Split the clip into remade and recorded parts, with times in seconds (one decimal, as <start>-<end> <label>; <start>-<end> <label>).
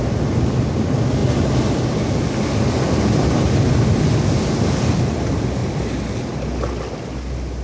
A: 0.0-7.6 recorded